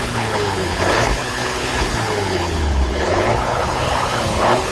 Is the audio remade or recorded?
remade